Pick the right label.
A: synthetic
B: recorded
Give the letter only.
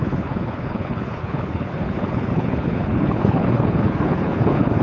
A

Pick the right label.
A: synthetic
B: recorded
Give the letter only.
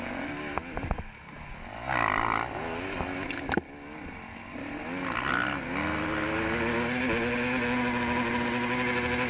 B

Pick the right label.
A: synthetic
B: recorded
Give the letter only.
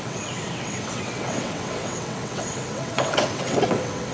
A